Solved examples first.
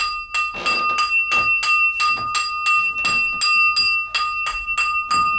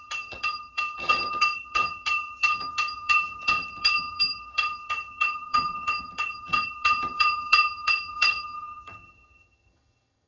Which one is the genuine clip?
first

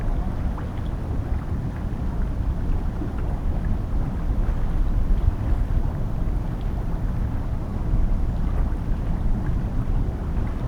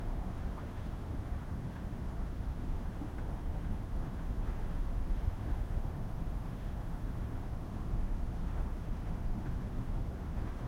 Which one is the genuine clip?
first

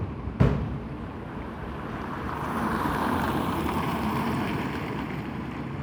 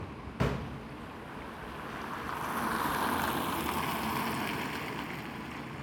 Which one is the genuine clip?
second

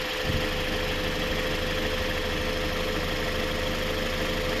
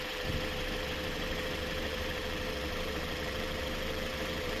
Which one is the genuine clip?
first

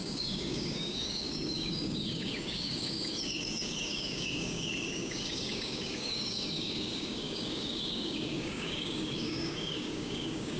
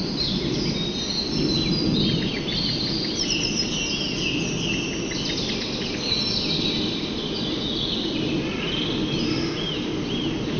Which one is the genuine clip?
second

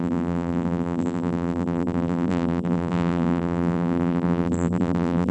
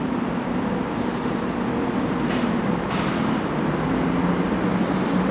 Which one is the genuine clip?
second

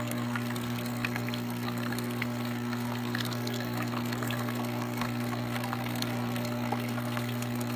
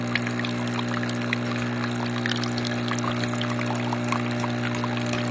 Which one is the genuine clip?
second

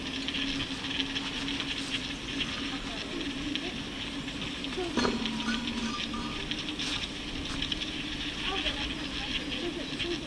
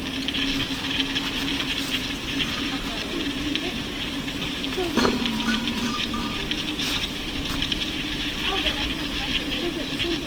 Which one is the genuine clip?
first